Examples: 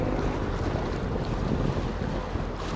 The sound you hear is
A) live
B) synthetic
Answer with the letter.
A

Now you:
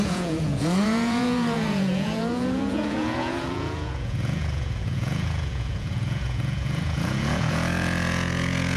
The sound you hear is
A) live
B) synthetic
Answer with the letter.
B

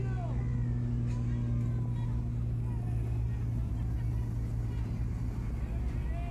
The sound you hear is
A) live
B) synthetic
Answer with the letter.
A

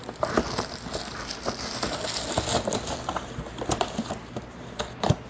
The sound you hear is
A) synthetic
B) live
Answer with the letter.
B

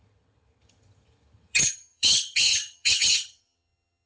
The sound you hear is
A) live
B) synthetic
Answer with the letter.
B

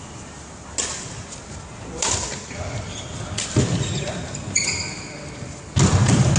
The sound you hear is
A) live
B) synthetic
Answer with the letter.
A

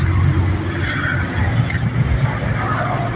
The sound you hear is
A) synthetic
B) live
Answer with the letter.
B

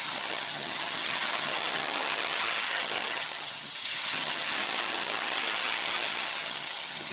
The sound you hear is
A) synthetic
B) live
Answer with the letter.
A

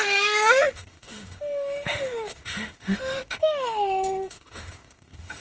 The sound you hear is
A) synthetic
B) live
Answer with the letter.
A